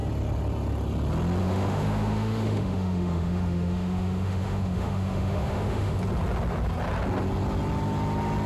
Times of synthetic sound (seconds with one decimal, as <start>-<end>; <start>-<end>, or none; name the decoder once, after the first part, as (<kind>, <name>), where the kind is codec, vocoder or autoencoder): 1.4-6.0 (autoencoder, DAC-VAE)